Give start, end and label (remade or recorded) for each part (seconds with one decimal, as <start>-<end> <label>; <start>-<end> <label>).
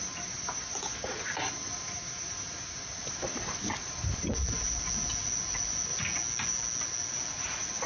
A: 0.0-7.9 recorded